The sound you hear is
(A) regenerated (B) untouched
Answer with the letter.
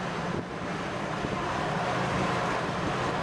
B